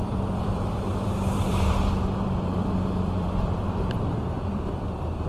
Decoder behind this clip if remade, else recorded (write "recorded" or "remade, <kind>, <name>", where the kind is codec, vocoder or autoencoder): remade, vocoder, BigVGAN v2